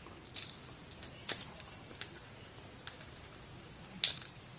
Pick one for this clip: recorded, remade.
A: recorded